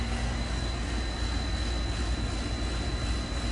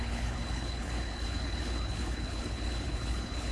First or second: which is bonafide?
first